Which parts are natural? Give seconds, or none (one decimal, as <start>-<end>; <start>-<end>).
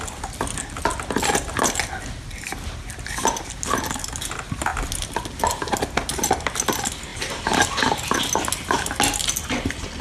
0.0-10.0